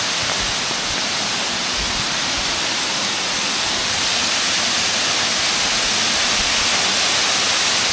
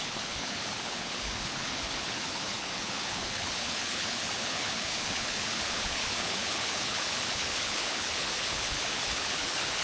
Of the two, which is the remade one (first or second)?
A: second